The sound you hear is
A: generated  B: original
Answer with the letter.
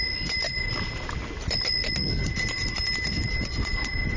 B